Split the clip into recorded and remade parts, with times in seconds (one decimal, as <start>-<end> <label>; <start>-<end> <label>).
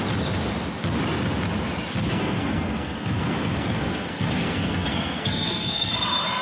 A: 0.0-2.1 recorded; 2.1-5.9 remade; 5.9-6.4 recorded